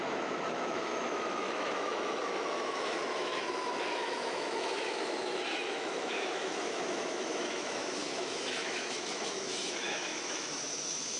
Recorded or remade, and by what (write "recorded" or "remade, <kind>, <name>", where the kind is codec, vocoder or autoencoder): remade, autoencoder, DAC-VAE